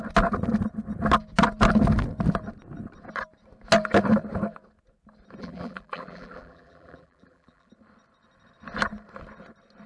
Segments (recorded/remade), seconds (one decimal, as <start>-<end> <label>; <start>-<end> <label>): 0.0-5.4 recorded; 5.4-7.7 remade; 7.7-9.9 recorded